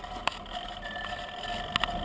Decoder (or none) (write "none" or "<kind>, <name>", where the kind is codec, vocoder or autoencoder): none